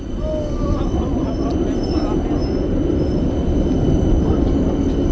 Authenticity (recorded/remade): recorded